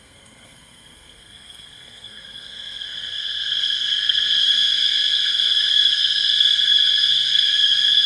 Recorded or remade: remade